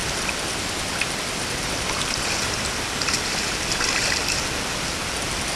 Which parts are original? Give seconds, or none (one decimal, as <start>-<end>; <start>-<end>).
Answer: 0.0-5.6